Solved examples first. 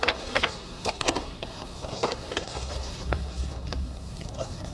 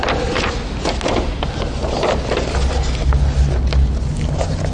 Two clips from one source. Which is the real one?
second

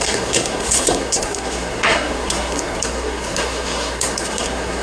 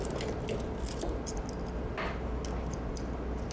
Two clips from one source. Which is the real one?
second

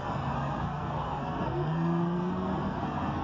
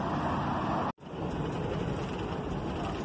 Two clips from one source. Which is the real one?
second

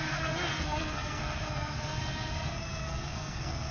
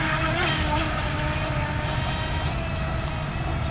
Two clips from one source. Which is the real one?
second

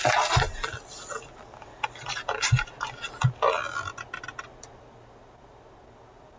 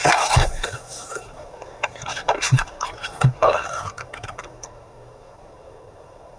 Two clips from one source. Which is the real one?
first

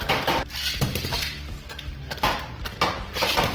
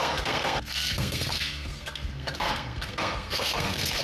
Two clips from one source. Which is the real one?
first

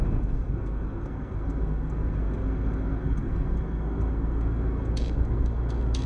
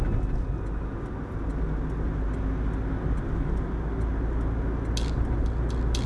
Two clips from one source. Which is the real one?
second